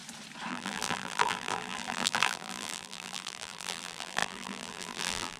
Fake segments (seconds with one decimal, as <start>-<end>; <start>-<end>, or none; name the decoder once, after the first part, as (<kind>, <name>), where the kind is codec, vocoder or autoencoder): 0.5-5.4 (vocoder, BigVGAN v2)